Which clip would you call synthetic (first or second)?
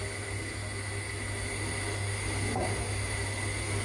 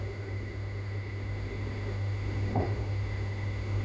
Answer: second